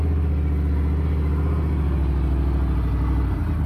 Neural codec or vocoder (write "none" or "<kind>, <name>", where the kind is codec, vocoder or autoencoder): none